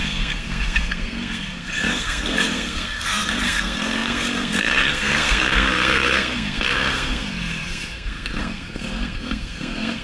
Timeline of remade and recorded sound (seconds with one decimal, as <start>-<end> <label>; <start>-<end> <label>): 0.0-10.0 remade